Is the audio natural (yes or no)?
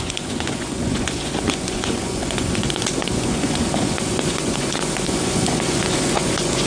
no